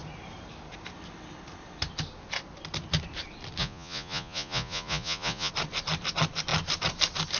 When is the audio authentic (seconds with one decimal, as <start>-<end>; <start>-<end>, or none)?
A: 0.0-3.6; 5.5-7.4